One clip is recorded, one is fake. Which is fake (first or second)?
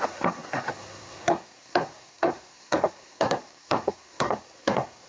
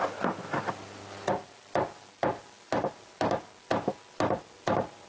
first